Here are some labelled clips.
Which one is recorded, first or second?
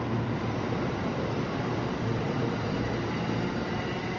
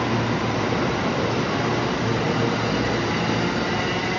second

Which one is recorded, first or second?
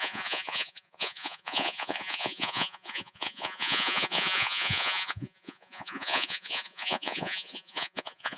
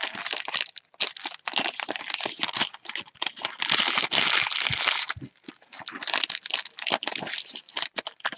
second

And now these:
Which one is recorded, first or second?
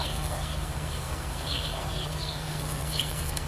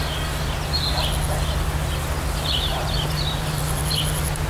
second